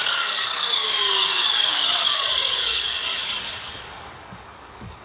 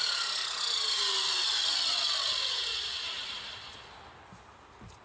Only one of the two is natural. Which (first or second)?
second